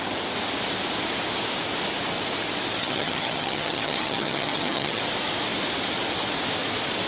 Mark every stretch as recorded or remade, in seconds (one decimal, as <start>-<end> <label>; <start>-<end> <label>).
0.0-2.8 recorded; 2.8-5.0 remade; 5.0-7.1 recorded